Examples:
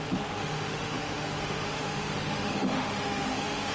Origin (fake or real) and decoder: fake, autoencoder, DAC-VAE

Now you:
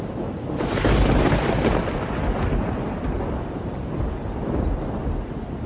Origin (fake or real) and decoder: real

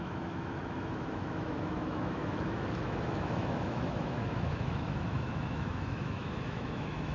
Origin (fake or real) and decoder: fake, autoencoder, DAC-VAE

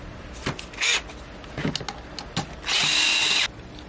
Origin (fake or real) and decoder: real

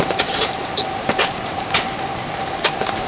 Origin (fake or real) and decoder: fake, vocoder, BigVGAN v2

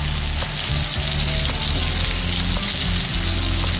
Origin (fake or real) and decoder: real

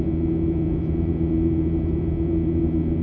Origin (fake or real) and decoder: fake, vocoder, Vocos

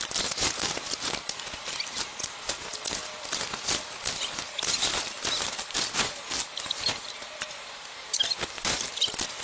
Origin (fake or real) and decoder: real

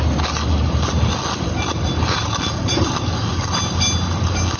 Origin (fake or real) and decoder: real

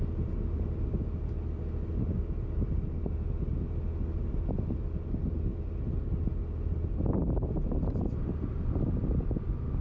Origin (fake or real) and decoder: real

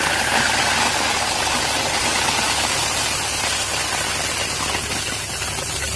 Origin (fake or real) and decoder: real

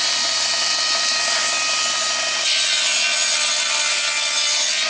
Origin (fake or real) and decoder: real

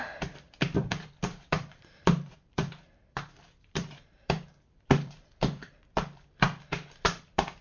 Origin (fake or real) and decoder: fake, vocoder, BigVGAN v2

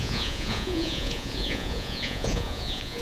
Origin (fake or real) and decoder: fake, vocoder, Vocos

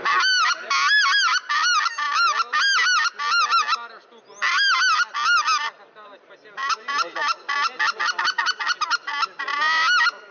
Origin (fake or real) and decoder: real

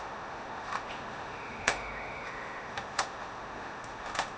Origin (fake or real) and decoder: fake, autoencoder, DAC-VAE